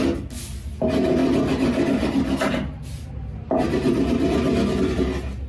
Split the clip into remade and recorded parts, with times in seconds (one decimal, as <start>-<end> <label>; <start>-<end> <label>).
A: 0.0-5.5 recorded